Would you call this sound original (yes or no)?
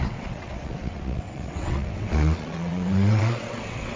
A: no